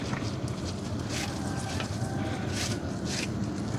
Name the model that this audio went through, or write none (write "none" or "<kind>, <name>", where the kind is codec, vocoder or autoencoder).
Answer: none